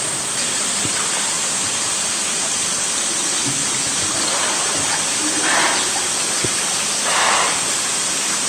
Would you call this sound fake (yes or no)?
no